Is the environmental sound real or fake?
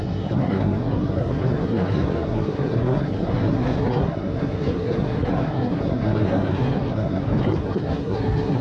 fake